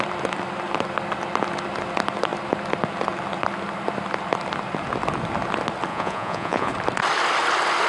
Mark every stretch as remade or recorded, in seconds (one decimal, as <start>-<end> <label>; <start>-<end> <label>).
0.0-5.9 recorded; 5.9-6.7 remade; 6.7-7.9 recorded

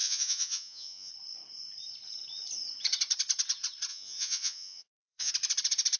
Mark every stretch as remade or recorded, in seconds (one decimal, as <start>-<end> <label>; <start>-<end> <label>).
0.0-1.1 remade; 1.1-3.9 recorded; 3.9-5.3 remade; 5.3-6.0 recorded

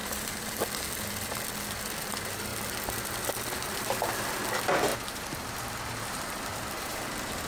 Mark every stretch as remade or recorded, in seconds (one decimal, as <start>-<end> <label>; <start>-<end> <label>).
0.0-0.6 remade; 0.6-4.9 recorded; 4.9-7.0 remade; 7.0-7.5 recorded

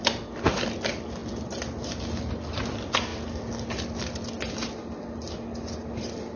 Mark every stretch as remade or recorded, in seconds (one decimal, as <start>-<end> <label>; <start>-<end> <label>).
0.0-6.4 recorded

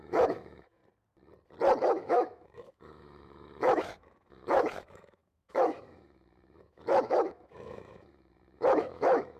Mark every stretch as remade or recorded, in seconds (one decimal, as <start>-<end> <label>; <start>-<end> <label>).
0.0-0.8 remade; 0.8-1.8 recorded; 1.8-9.4 remade

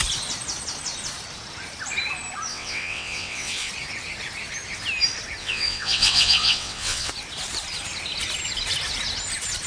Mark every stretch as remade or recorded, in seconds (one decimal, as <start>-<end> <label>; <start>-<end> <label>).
0.0-2.5 recorded; 2.5-3.7 remade; 3.7-5.4 recorded; 5.4-7.1 remade; 7.1-9.7 recorded

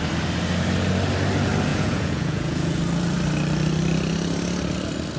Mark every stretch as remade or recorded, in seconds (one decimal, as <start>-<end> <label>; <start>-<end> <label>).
0.0-1.7 recorded; 1.7-2.8 remade; 2.8-5.2 recorded